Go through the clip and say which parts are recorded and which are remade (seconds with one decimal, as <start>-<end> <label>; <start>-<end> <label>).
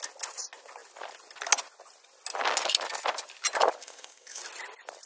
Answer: 0.0-3.8 recorded; 3.8-4.4 remade; 4.4-5.0 recorded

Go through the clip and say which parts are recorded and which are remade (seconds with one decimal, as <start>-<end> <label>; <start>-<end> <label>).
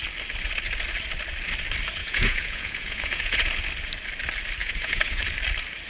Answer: 0.0-2.0 recorded; 2.0-3.5 remade; 3.5-4.6 recorded; 4.6-5.2 remade; 5.2-5.9 recorded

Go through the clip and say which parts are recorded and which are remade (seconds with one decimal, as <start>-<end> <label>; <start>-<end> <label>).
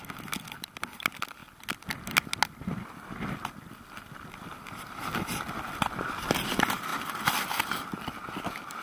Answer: 0.0-8.8 recorded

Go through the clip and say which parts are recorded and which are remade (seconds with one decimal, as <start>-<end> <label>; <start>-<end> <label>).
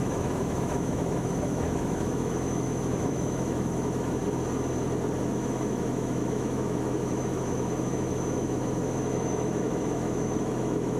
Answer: 0.0-4.2 remade; 4.2-5.2 recorded; 5.2-11.0 remade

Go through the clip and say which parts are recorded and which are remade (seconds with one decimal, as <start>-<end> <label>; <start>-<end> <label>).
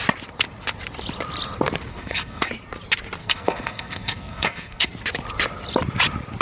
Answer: 0.0-1.9 recorded; 1.9-2.5 remade; 2.5-3.2 recorded; 3.2-4.9 remade; 4.9-6.4 recorded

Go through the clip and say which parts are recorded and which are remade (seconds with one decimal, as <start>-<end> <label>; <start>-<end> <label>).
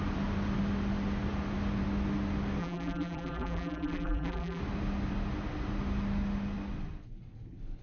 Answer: 0.0-2.6 recorded; 2.6-4.6 remade; 4.6-7.8 recorded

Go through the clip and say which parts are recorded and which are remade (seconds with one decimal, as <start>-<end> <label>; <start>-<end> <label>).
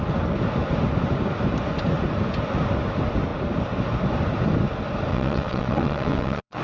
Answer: 0.0-5.1 recorded; 5.1-6.6 remade